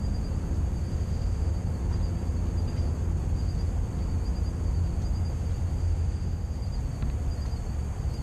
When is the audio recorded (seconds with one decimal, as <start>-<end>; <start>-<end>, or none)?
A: 0.0-0.9; 1.5-5.7; 6.6-8.2